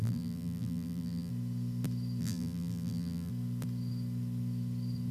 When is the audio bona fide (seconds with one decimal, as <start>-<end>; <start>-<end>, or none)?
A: 1.3-2.2; 3.3-5.1